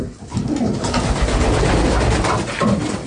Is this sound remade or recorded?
recorded